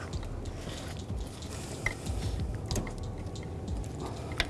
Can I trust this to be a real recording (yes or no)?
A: yes